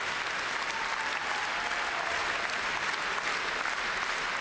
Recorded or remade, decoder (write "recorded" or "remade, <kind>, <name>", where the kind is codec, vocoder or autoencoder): recorded